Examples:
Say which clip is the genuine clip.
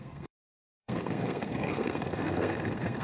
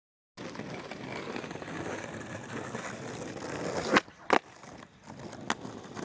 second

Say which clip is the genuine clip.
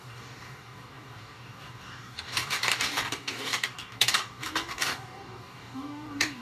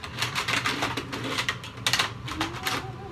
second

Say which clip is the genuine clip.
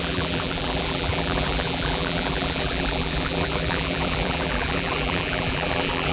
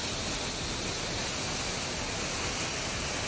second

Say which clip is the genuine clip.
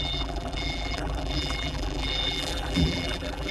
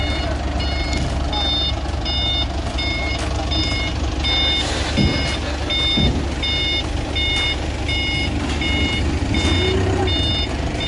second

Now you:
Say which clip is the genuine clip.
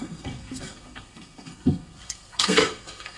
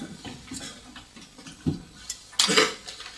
second